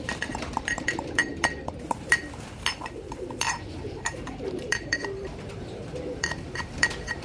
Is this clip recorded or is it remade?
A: remade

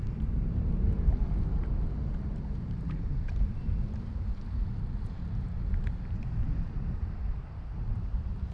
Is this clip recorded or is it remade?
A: remade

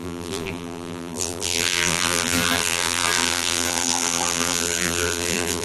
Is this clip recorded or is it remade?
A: remade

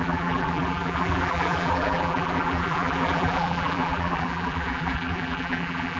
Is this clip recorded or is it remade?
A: remade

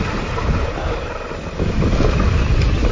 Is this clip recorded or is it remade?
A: recorded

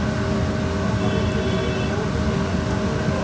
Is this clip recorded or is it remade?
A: recorded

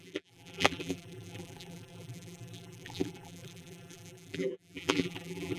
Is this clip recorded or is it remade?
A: remade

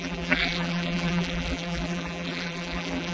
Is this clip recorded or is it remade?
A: remade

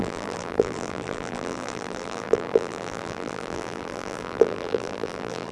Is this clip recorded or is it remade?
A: remade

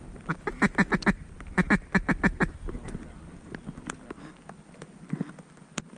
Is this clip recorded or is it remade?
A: recorded